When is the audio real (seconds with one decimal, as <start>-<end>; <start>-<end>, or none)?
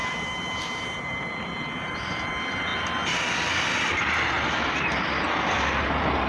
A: 2.3-6.3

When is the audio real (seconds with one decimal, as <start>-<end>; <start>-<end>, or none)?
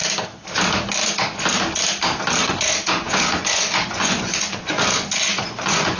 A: 0.0-2.4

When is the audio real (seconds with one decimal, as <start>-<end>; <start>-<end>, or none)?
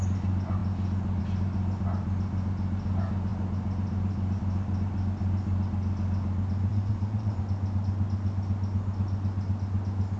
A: 0.0-6.7; 7.4-10.2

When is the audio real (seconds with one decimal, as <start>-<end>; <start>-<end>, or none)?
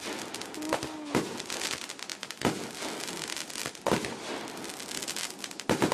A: 0.0-5.9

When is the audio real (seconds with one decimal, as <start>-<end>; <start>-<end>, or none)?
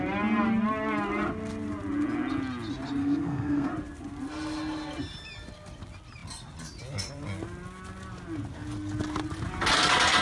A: 0.0-3.0; 3.7-10.2